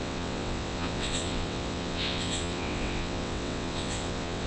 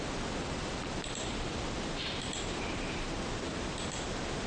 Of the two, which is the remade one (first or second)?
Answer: first